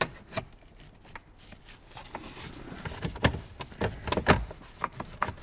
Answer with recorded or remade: recorded